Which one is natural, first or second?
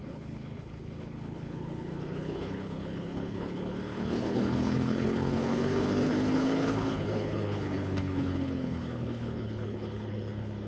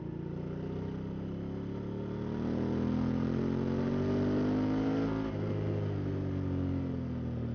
second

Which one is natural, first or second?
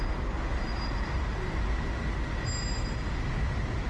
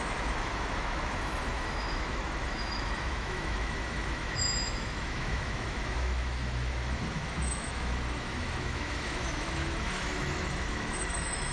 first